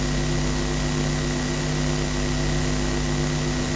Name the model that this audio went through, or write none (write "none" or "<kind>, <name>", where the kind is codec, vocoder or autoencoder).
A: none